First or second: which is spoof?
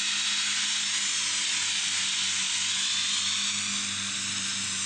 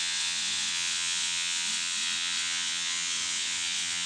second